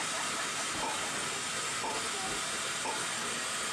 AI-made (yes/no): no